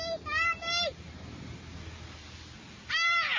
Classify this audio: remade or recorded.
recorded